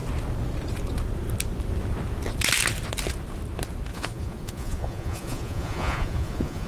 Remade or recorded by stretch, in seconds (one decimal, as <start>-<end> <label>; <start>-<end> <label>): 0.0-3.9 recorded; 3.9-6.7 remade